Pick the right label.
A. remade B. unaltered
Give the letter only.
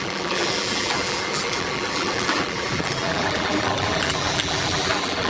A